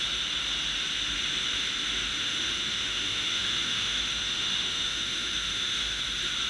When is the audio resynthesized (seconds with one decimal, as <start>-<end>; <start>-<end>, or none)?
2.1-6.0